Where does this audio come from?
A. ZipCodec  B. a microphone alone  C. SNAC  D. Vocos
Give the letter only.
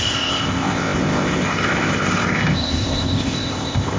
A